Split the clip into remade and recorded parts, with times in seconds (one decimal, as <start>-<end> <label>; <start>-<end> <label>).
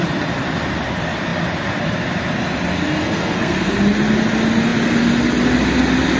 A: 0.0-3.0 recorded; 3.0-3.7 remade; 3.7-6.2 recorded